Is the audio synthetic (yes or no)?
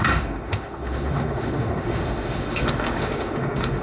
yes